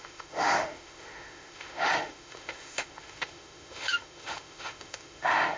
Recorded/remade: remade